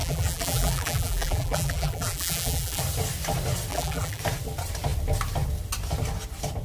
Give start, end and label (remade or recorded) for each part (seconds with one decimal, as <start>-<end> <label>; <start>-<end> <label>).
0.0-2.8 remade; 2.8-3.7 recorded; 3.7-4.2 remade; 4.2-6.6 recorded